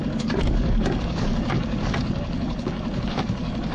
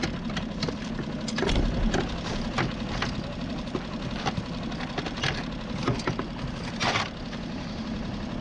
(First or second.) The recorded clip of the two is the second